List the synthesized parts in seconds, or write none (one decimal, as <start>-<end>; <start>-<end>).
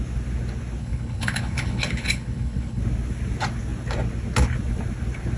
0.8-2.8